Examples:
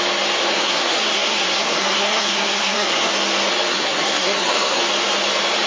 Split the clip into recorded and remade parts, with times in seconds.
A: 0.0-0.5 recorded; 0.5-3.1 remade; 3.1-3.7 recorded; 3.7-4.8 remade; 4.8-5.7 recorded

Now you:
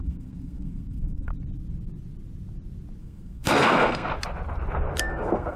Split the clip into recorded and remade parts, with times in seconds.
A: 0.0-1.3 remade; 1.3-3.0 recorded; 3.0-4.1 remade; 4.1-5.0 recorded; 5.0-5.6 remade

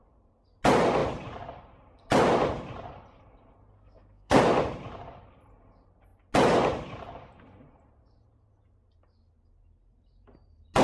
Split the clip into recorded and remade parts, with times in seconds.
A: 0.0-3.7 recorded; 3.7-4.4 remade; 4.4-10.8 recorded